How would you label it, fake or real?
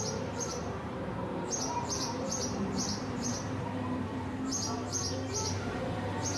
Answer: fake